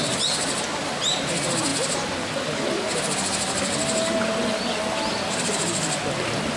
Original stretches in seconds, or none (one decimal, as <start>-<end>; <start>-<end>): 0.8-6.6